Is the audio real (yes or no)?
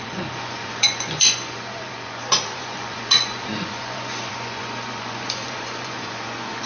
no